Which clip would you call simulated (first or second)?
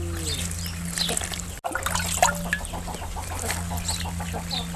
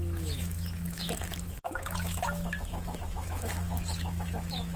second